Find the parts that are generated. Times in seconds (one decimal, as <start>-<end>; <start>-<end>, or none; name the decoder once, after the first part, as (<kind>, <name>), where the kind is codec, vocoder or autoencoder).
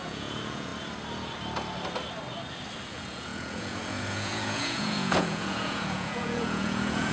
0.0-0.7 (vocoder, Vocos); 2.9-7.1